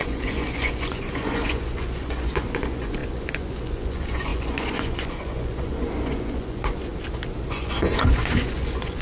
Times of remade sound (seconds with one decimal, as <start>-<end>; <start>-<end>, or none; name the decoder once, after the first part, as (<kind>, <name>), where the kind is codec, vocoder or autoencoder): 0.0-6.9 (vocoder, Vocos); 7.5-9.0